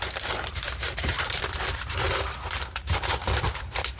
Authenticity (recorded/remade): remade